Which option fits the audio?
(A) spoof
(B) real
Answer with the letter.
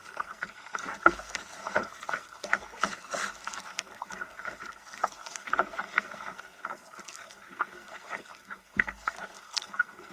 A